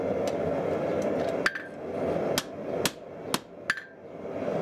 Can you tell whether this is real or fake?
real